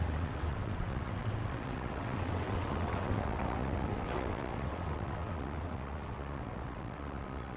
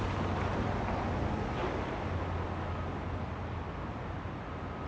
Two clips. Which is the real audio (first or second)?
second